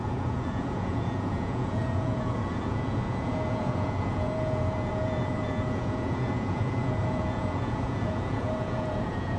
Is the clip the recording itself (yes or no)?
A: no